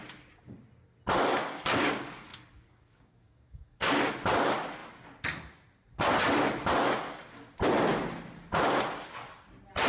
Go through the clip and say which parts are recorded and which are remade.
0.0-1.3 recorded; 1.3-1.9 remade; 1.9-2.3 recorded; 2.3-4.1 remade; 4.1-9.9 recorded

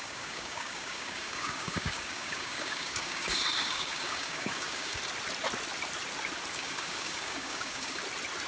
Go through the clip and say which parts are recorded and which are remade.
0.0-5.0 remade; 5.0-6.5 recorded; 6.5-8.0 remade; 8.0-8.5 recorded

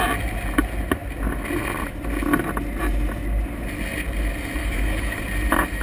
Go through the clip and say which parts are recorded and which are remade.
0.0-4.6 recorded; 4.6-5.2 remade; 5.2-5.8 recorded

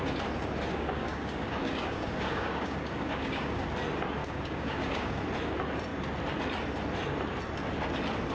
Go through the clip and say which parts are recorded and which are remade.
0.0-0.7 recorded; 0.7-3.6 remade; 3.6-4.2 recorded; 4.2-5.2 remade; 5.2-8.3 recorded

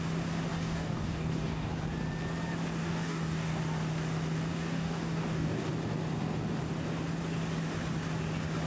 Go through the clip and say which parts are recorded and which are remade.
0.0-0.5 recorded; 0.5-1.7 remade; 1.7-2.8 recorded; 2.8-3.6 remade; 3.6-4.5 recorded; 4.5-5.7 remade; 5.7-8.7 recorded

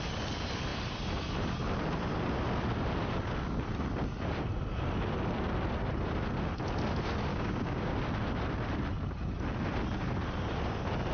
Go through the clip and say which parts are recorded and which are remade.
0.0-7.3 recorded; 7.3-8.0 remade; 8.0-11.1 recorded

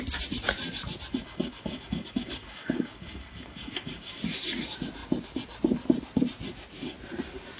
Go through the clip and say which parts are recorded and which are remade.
0.0-1.1 recorded; 1.1-4.2 remade; 4.2-7.6 recorded